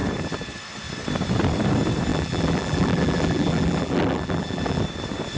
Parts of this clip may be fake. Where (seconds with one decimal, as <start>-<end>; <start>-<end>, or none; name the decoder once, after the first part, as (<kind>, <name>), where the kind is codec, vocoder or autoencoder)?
2.1-4.8 (vocoder, BigVGAN v2)